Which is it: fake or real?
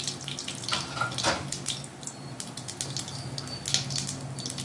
real